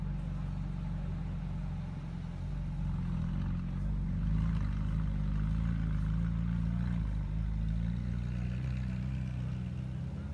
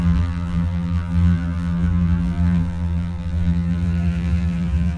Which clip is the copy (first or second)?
second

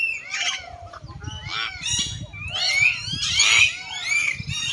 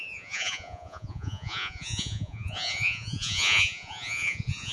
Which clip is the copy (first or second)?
second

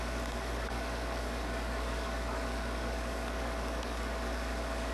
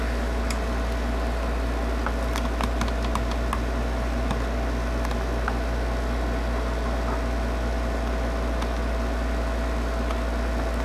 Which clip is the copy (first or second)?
first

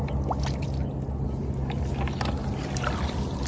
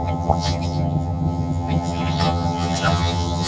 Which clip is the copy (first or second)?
second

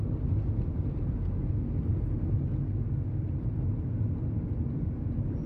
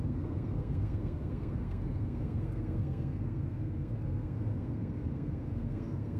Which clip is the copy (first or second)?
second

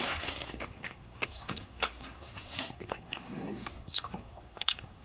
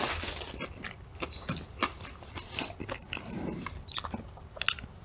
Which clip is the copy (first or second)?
first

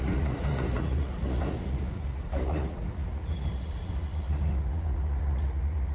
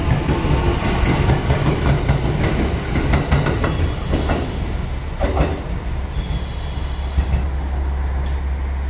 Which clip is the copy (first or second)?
first